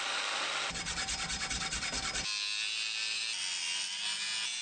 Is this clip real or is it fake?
real